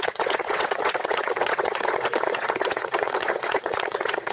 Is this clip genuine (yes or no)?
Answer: no